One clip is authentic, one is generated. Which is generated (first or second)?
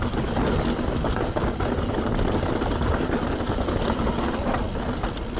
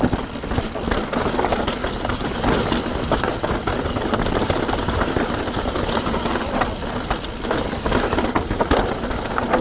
second